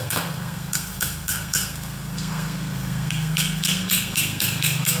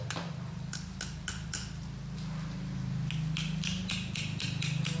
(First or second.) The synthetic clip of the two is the first